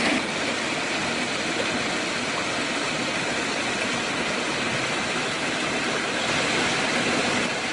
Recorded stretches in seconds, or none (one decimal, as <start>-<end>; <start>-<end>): 0.0-7.7